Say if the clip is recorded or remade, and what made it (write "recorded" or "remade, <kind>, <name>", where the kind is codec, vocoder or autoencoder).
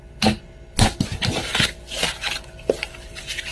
recorded